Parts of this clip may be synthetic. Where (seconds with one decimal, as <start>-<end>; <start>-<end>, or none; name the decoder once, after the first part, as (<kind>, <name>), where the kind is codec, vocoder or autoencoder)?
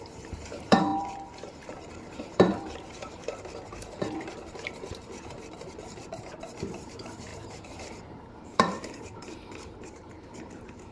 0.0-10.9 (vocoder, BigVGAN v2)